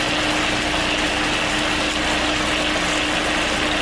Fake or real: real